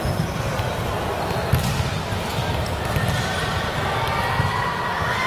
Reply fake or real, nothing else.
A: real